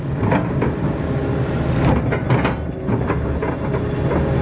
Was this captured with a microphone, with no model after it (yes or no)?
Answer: yes